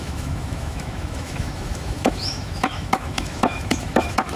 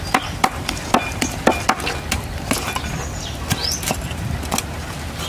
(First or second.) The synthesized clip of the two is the first